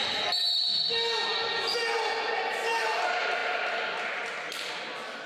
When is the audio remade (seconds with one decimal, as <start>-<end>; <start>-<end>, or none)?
none